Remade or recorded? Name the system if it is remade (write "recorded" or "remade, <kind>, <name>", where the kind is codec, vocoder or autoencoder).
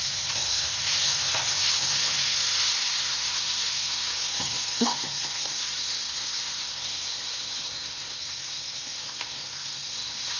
remade, codec, SNAC